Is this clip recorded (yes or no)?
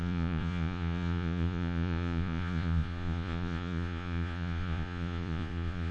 no